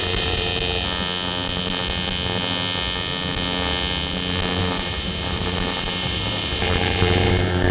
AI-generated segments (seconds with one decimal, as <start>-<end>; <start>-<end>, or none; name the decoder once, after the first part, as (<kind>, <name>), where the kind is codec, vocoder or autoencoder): 0.0-0.5 (vocoder, BigVGAN v2); 4.6-7.7